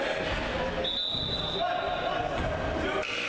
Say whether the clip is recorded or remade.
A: recorded